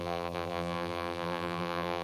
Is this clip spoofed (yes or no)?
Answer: yes